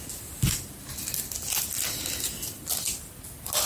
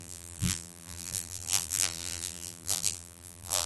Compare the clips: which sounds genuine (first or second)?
first